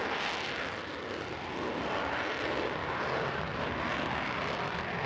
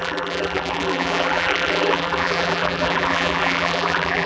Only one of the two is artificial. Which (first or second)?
second